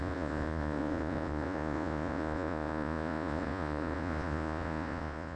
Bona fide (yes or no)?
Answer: no